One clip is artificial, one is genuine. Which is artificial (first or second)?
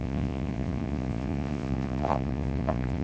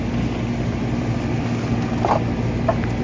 first